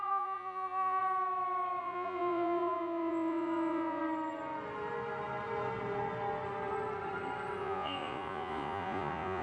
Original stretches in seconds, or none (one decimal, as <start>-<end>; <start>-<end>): 1.0-1.8; 4.0-7.6